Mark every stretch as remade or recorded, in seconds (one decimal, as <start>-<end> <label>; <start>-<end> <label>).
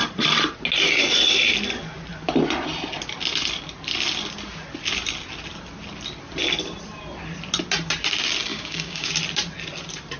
0.0-8.5 recorded; 8.5-9.1 remade; 9.1-10.2 recorded